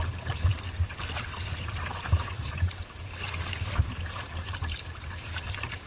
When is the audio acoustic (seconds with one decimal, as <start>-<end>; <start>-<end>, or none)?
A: 0.5-2.3; 3.2-3.8

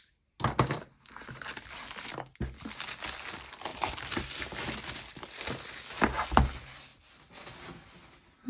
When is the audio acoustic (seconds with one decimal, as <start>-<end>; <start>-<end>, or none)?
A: 0.0-3.7; 4.2-8.5

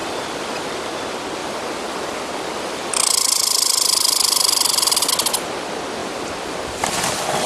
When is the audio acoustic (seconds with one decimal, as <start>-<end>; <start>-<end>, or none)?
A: 0.7-1.4; 5.1-6.0; 7.1-7.5

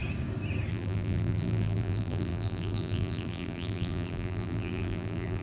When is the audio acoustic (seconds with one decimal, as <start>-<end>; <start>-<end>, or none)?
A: 0.0-0.7

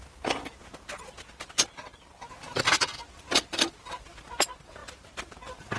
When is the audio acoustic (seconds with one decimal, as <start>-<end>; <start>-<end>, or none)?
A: 0.0-5.8

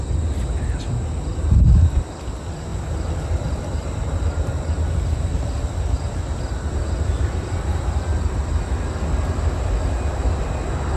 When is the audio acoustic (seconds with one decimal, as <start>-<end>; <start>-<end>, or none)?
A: 0.0-2.7; 3.6-11.0

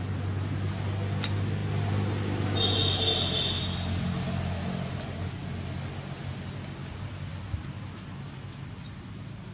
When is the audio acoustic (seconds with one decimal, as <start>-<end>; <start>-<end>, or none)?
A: 0.0-9.5